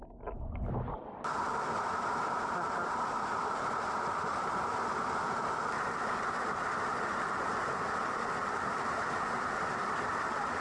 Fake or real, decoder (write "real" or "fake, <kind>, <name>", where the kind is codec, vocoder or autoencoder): real